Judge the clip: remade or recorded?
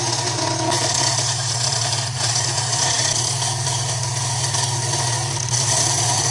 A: recorded